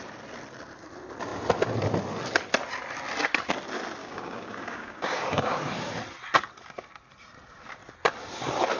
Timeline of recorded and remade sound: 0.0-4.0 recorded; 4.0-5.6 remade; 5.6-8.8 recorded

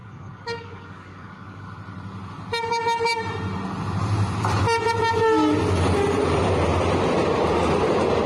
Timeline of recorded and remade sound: 0.0-1.6 remade; 1.6-8.3 recorded

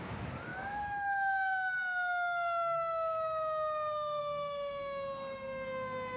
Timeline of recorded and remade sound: 0.0-6.2 remade

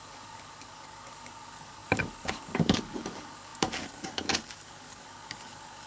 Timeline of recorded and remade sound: 0.0-5.9 remade